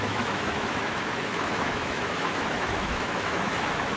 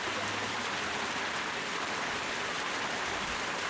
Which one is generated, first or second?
first